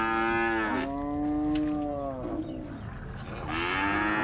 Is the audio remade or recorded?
recorded